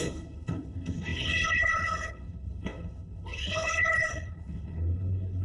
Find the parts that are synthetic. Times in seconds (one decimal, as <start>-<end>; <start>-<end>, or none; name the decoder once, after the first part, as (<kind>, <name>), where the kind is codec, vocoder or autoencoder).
0.0-5.4 (codec, HILCodec)